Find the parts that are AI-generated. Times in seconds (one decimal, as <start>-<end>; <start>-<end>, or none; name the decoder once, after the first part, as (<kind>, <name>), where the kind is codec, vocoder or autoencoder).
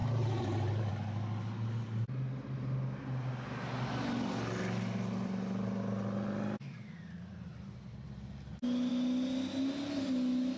0.0-0.9 (vocoder, BigVGAN v2)